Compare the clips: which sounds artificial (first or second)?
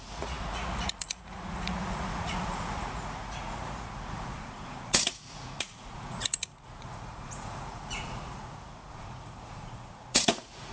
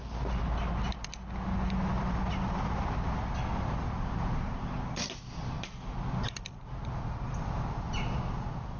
first